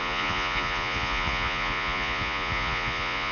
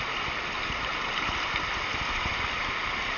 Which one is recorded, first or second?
second